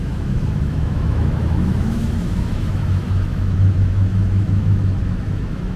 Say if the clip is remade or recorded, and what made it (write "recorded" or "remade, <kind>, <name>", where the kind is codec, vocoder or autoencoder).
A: remade, autoencoder, DAC-VAE